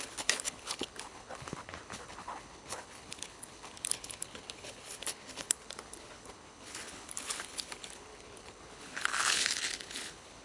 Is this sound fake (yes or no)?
yes